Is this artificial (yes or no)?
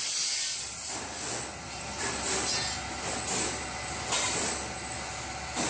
no